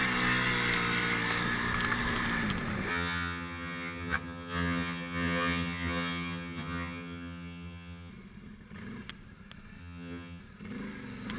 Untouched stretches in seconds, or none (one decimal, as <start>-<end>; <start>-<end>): 0.0-2.9; 8.1-9.8; 10.4-11.4